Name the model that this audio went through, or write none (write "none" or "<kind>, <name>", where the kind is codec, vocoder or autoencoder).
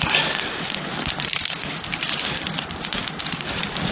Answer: none